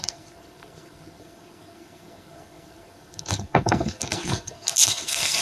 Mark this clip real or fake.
fake